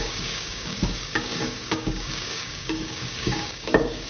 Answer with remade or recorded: remade